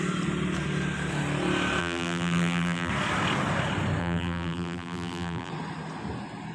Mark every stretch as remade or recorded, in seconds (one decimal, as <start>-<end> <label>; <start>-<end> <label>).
0.0-1.8 recorded; 1.8-2.9 remade; 2.9-4.0 recorded; 4.0-5.5 remade; 5.5-6.5 recorded